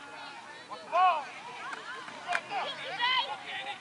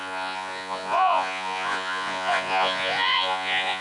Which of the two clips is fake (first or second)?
second